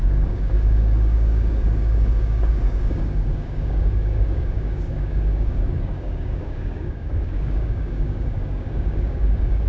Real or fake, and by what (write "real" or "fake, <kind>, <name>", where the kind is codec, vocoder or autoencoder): fake, codec, DAC